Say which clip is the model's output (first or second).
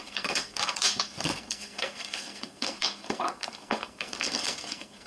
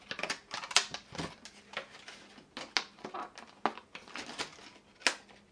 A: first